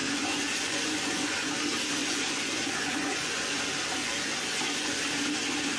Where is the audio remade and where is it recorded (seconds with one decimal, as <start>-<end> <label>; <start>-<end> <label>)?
0.0-1.5 remade; 1.5-2.0 recorded; 2.0-3.6 remade; 3.6-4.0 recorded; 4.0-5.0 remade; 5.0-5.8 recorded